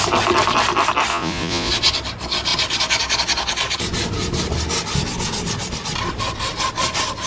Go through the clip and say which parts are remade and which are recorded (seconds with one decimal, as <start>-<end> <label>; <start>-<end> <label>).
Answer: 0.0-1.1 recorded; 1.1-1.7 remade; 1.7-7.3 recorded